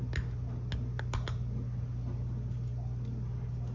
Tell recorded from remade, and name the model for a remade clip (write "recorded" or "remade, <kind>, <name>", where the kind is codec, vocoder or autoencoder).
recorded